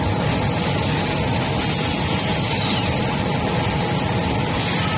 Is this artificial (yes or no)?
yes